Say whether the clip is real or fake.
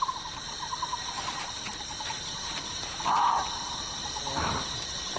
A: fake